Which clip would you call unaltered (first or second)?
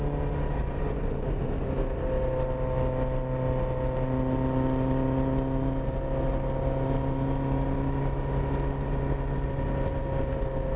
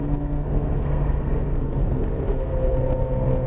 first